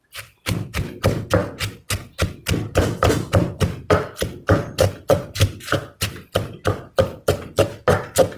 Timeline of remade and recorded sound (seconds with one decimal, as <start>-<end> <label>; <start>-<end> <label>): 0.0-8.4 recorded